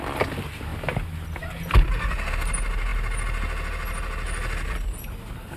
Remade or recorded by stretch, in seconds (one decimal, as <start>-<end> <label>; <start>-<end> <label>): 0.0-5.6 recorded